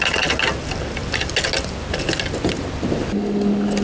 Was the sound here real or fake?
real